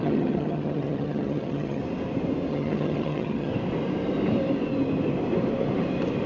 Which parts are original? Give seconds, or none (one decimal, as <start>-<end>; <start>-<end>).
1.8-2.5; 3.5-6.3